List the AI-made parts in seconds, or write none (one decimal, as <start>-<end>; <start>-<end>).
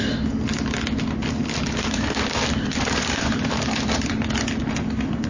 1.4-4.6